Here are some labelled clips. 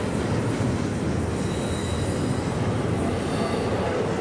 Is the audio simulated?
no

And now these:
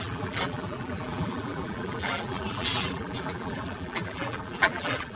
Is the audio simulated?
yes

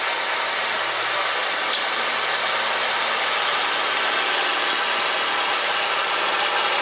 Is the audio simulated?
no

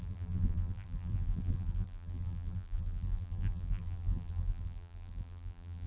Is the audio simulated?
yes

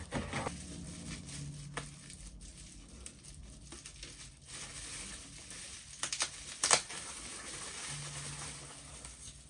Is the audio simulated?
no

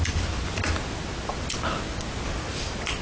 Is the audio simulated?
no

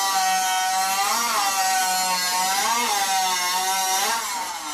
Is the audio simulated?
no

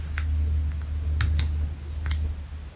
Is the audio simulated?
no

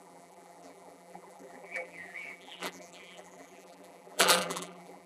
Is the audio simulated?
yes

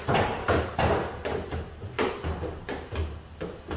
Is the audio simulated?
no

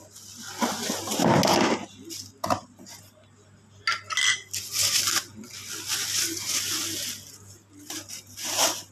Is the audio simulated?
no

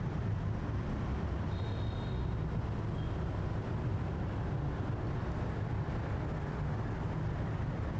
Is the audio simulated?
no